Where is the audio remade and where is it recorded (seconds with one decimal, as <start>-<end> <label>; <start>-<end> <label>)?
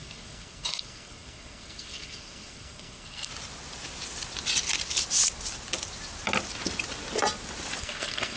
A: 0.0-3.3 remade; 3.3-7.8 recorded; 7.8-8.4 remade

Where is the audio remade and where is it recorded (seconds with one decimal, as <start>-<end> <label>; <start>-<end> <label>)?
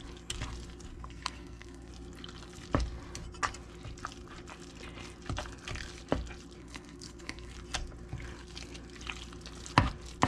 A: 0.0-0.9 recorded; 0.9-1.9 remade; 1.9-6.6 recorded; 6.6-7.5 remade; 7.5-10.3 recorded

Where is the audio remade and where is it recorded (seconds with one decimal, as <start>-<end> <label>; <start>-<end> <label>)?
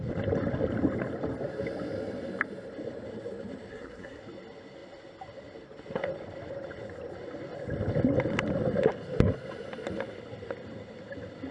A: 0.0-3.7 recorded; 3.7-4.2 remade; 4.2-11.5 recorded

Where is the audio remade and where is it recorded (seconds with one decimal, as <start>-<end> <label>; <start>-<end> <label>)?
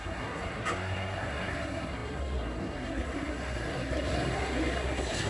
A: 0.0-5.3 remade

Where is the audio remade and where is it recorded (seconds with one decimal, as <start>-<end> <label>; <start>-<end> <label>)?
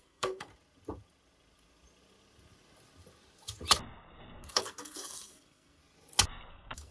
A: 0.0-0.5 remade; 0.5-4.4 recorded; 4.4-5.8 remade; 5.8-6.5 recorded; 6.5-6.9 remade